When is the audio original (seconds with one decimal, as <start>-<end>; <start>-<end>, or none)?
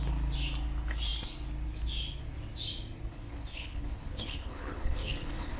0.0-3.1